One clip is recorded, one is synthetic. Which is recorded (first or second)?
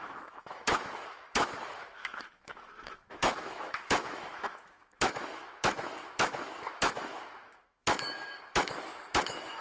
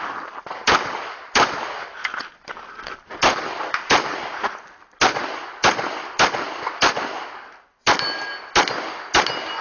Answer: second